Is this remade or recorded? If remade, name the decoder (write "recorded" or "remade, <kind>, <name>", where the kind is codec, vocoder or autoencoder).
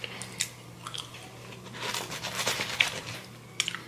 recorded